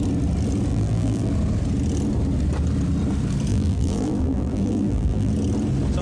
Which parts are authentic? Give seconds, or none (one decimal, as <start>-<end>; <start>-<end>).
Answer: 0.0-0.7; 1.3-3.5; 5.3-6.0